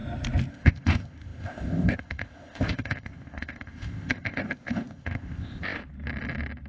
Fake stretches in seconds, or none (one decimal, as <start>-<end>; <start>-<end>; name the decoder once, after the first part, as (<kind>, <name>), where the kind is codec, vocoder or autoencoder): 0.5-5.8 (codec, ZipCodec)

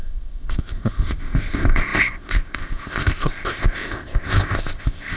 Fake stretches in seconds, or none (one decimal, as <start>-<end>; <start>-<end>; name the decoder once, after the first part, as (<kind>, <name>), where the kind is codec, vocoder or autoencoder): 0.0-5.2 (codec, ZipCodec)

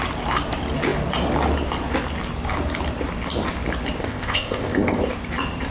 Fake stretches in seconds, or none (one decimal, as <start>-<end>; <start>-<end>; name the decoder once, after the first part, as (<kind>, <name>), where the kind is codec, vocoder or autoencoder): 4.0-5.0 (codec, ZipCodec)

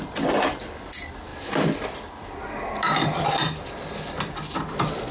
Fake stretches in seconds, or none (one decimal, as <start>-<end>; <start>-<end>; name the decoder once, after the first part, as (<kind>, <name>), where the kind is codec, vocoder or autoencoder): none

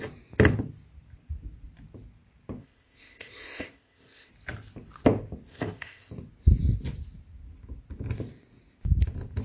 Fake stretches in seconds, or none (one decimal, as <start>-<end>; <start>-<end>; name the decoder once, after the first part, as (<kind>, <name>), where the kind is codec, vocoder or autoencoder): 2.6-4.3 (codec, ZipCodec); 5.5-6.1